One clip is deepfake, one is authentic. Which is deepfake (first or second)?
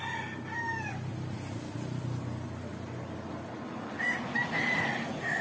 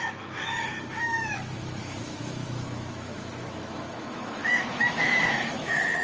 second